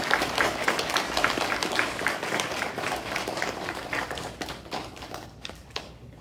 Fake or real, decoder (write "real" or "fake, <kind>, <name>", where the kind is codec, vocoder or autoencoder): fake, codec, DAC